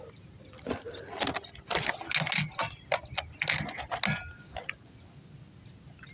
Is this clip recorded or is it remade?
recorded